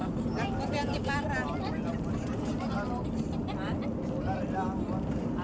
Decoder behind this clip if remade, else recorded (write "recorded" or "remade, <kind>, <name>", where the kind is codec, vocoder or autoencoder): recorded